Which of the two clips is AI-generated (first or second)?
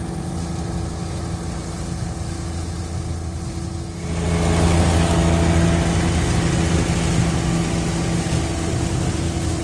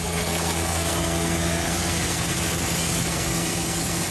second